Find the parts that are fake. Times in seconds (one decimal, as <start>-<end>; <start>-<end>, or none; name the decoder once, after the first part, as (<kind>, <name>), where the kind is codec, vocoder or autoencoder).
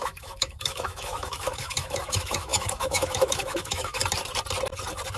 0.0-4.0 (autoencoder, DAC-VAE)